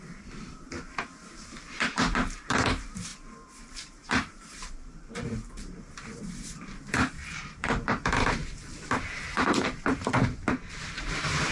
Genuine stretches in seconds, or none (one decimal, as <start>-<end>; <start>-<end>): 10.1-10.8